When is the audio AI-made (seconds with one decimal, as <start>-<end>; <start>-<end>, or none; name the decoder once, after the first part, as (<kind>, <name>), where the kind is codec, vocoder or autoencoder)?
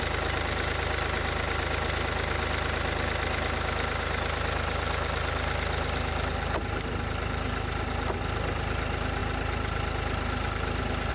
none